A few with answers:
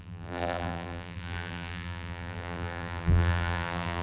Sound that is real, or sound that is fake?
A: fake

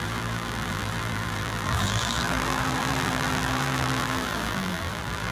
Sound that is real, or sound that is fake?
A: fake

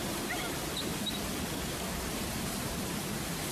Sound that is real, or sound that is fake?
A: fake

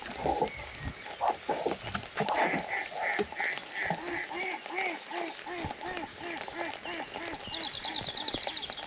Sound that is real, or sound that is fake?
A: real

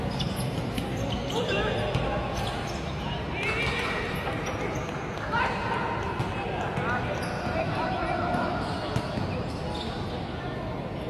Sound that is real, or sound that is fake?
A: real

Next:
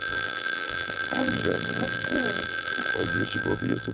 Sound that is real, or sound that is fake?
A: fake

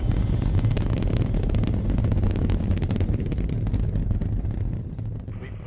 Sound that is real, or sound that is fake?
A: fake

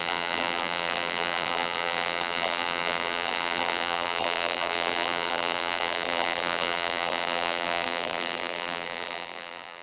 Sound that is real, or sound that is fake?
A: fake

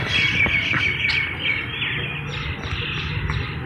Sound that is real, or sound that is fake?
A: real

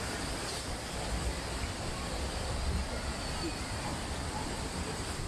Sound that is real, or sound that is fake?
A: fake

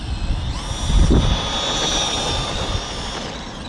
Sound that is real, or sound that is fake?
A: real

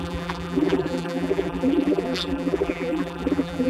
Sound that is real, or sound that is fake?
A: fake